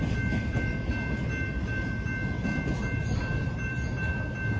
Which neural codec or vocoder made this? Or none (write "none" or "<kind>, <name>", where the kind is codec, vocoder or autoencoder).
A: none